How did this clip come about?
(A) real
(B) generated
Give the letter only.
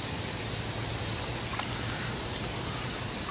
A